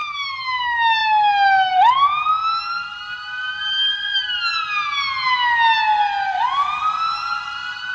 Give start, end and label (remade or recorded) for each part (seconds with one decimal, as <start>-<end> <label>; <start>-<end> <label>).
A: 0.0-7.9 recorded